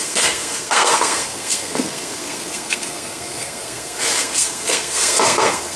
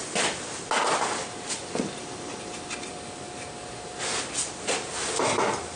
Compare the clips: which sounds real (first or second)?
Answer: second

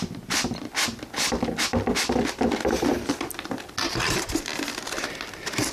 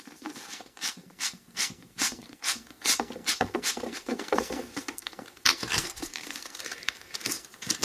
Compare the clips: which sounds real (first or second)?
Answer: first